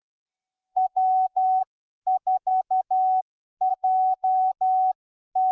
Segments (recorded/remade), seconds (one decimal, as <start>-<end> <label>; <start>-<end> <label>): 0.0-1.6 remade; 1.6-3.7 recorded; 3.7-4.5 remade; 4.5-5.5 recorded